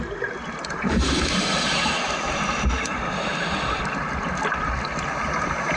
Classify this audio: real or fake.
real